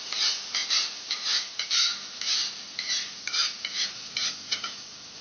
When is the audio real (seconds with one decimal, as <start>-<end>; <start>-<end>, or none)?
0.0-5.2